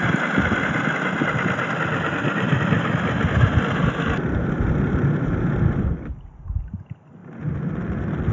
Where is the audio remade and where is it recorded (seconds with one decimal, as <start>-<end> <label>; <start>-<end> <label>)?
0.0-8.3 recorded